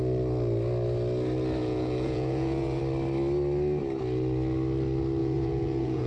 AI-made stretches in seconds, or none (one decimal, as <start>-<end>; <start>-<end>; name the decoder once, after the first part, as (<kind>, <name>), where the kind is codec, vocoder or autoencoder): 1.6-2.8 (vocoder, Vocos); 5.2-6.1